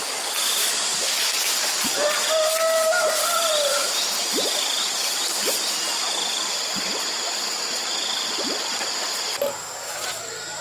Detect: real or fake real